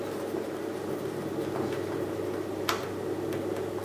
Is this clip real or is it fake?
real